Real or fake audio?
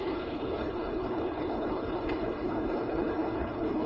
fake